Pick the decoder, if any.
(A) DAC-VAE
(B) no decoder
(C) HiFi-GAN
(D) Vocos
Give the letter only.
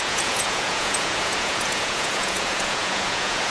D